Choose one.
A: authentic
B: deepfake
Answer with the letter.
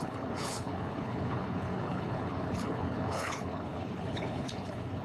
B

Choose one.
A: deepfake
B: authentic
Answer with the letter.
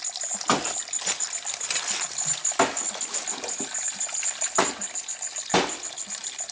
B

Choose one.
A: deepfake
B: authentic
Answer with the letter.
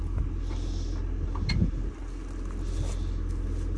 B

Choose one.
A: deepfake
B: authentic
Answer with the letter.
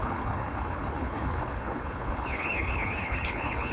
A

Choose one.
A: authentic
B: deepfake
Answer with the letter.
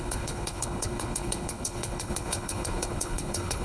B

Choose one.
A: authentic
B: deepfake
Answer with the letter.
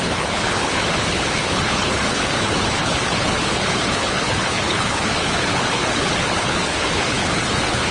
B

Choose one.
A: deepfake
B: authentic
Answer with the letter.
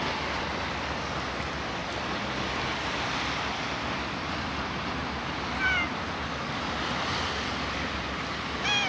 B